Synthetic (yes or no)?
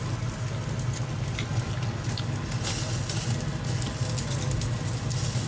no